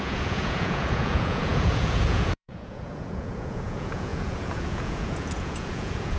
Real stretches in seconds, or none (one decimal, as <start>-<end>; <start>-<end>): none